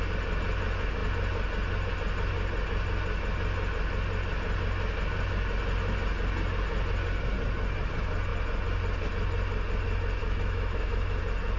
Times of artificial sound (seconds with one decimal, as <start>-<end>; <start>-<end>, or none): 10.2-11.2